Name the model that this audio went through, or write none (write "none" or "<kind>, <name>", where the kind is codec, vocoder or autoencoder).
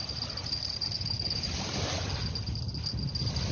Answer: none